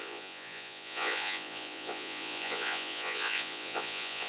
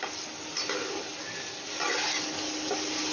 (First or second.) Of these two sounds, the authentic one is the second